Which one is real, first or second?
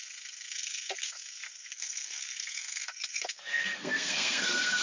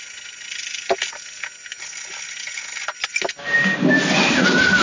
second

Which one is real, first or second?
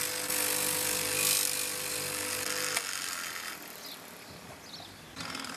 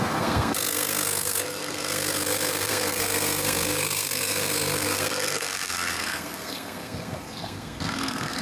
first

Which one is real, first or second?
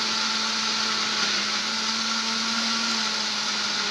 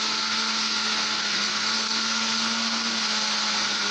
first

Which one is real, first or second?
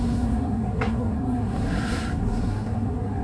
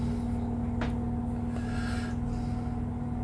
second